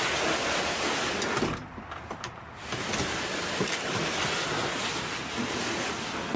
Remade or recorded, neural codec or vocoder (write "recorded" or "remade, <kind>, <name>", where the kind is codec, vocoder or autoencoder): recorded